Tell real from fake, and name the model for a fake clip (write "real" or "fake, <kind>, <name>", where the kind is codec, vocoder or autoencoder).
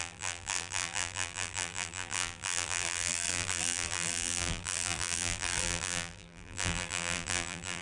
fake, vocoder, BigVGAN v2